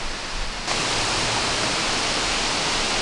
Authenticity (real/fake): real